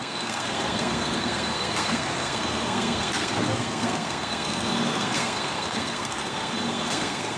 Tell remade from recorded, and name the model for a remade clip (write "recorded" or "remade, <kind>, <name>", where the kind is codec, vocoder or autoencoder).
remade, codec, SNAC